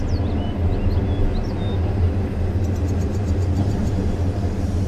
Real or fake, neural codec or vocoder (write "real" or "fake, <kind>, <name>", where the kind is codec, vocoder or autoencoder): real